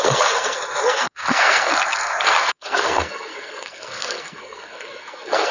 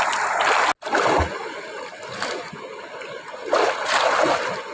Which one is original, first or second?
second